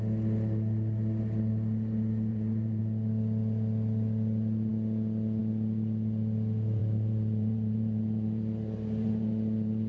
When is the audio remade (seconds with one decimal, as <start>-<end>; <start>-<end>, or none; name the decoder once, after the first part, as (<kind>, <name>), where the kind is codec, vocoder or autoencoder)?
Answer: 2.3-2.8 (vocoder, BigVGAN v2); 6.8-9.9